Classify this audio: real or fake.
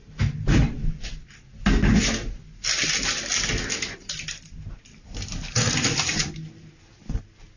real